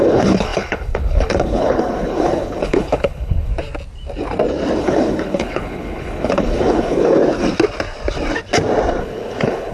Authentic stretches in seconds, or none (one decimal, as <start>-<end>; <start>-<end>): 3.5-4.8; 7.2-9.0